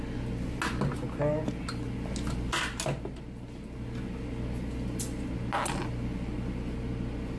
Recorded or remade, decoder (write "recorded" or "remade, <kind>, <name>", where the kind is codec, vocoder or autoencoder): recorded